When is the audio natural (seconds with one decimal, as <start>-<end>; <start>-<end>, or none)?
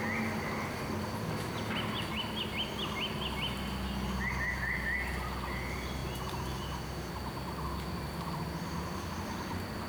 0.0-9.9